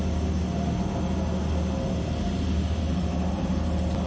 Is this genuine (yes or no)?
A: yes